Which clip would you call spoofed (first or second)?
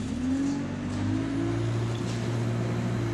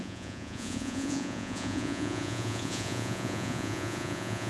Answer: second